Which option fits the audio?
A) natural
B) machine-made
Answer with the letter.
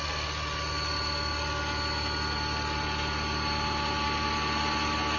A